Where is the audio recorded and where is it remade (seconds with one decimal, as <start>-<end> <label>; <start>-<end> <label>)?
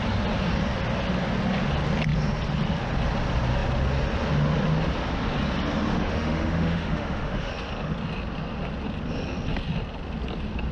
0.0-5.9 recorded; 5.9-7.5 remade; 7.5-10.7 recorded